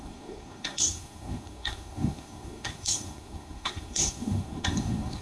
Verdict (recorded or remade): remade